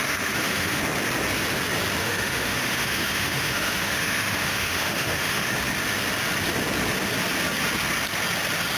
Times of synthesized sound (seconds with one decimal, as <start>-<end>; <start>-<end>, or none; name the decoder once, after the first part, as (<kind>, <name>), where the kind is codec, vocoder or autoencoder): 0.0-0.8 (autoencoder, DAC-VAE); 2.0-5.5